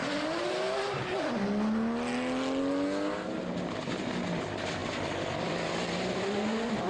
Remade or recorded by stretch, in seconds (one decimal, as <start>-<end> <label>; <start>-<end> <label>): 0.0-4.8 recorded; 4.8-5.5 remade; 5.5-6.9 recorded